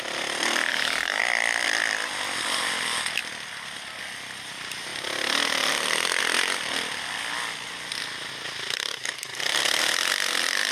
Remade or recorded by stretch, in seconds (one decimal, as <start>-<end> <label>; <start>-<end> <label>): 0.0-0.7 recorded; 0.7-1.2 remade; 1.2-8.9 recorded; 8.9-9.4 remade; 9.4-10.7 recorded